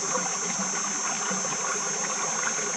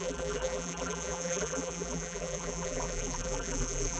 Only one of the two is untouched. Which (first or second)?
first